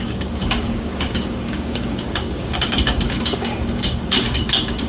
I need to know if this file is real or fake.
fake